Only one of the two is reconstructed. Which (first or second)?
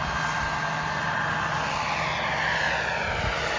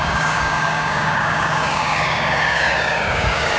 second